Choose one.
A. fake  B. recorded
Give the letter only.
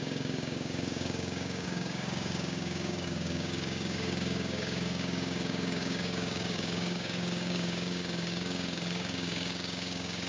A